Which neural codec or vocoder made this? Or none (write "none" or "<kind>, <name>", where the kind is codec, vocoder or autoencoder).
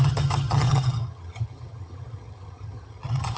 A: vocoder, HiFi-GAN